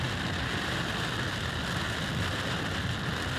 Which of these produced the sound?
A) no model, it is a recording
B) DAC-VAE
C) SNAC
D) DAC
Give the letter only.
A